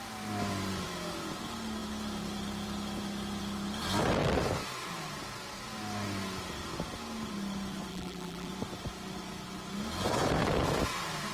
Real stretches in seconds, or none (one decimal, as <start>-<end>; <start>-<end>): 0.0-7.9; 8.5-11.3